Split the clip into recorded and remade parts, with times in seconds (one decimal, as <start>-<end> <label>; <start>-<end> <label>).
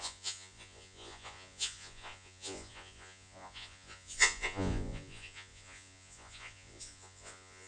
0.0-7.7 remade